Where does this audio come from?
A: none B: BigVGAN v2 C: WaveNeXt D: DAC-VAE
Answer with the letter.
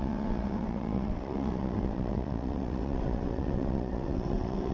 C